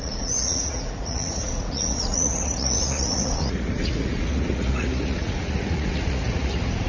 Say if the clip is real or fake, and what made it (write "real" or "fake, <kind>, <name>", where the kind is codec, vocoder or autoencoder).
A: fake, vocoder, Vocos